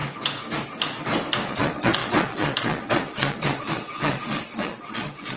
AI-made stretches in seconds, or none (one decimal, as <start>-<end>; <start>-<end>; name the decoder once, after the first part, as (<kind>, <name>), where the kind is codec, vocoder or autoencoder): 1.5-5.4 (vocoder, Vocos)